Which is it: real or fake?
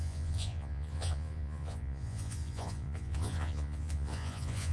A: fake